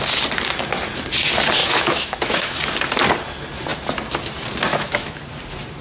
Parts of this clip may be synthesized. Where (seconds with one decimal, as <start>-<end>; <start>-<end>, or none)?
1.6-2.6; 4.7-5.2